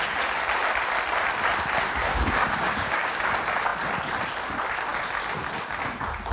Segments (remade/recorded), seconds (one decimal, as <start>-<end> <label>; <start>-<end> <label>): 0.0-2.1 recorded; 2.1-3.2 remade; 3.2-6.3 recorded